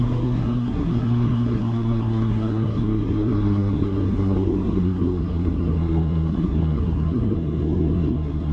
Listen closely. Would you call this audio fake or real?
fake